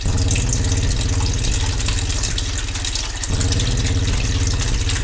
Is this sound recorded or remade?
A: recorded